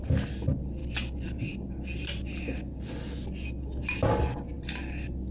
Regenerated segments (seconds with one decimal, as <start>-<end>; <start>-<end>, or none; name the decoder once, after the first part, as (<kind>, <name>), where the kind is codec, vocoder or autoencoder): none